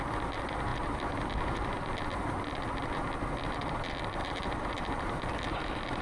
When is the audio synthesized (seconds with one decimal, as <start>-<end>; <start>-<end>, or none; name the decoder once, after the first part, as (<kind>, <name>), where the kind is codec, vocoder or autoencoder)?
4.2-5.3 (vocoder, BigVGAN v2)